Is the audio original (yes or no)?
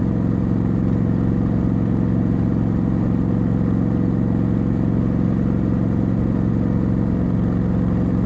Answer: yes